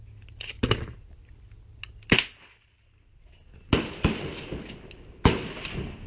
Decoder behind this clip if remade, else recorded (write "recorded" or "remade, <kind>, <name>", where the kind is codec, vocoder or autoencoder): recorded